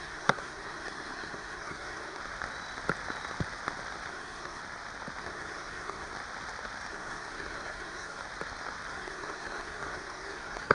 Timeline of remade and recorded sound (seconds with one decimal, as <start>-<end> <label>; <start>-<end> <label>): 0.0-2.2 remade; 2.2-4.1 recorded; 4.1-4.6 remade; 4.6-5.2 recorded; 5.2-6.1 remade; 6.1-6.9 recorded; 6.9-8.2 remade; 8.2-8.9 recorded; 8.9-10.7 remade